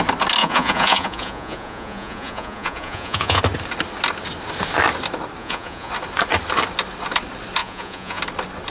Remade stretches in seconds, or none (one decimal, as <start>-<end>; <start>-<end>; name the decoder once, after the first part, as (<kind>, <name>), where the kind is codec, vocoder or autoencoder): 0.4-3.4 (vocoder, Vocos); 5.4-5.9; 7.6-8.2